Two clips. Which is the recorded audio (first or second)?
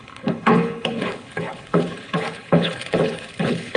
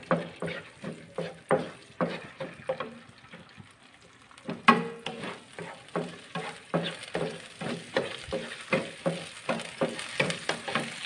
second